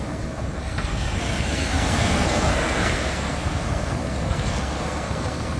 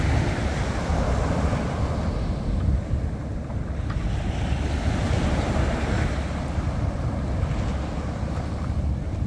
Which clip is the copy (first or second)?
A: first